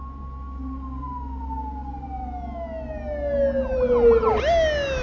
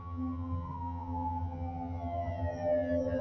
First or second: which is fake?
second